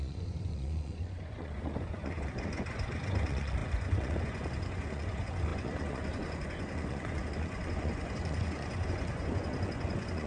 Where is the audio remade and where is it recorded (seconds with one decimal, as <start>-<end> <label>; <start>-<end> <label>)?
0.0-10.3 remade